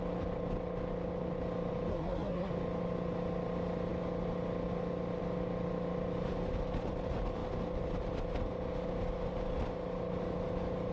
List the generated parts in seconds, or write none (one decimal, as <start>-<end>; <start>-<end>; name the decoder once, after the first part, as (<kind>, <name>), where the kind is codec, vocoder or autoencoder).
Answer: 1.9-2.5 (codec, SNAC)